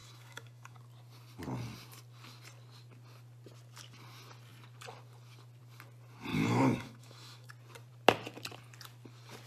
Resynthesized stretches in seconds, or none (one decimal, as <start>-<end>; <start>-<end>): 0.0-0.8; 6.3-7.5